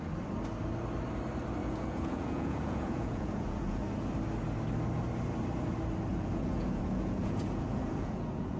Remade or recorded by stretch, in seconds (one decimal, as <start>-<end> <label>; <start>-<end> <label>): 0.0-1.6 recorded; 1.6-3.8 remade; 3.8-6.1 recorded; 6.1-8.6 remade

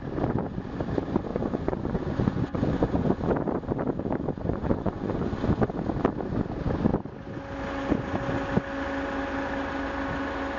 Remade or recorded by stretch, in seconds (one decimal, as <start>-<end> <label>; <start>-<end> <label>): 0.0-1.3 recorded; 1.3-3.3 remade; 3.3-4.5 recorded; 4.5-5.2 remade; 5.2-10.6 recorded

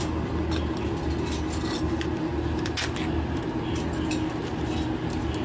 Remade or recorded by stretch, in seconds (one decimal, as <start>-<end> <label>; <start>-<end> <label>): 0.0-5.4 recorded

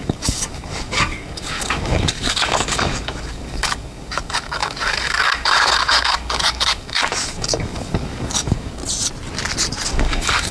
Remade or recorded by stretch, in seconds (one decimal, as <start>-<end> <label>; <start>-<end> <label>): 0.0-8.8 remade; 8.8-9.9 recorded; 9.9-10.5 remade

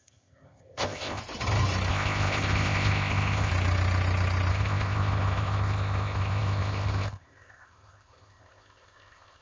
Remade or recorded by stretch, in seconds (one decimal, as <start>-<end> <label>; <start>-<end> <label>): 0.0-1.2 remade; 1.2-1.9 recorded; 1.9-3.5 remade; 3.5-4.5 recorded; 4.5-9.4 remade